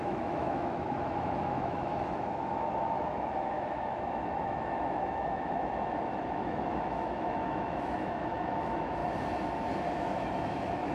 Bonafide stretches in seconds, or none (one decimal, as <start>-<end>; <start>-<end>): 9.0-9.9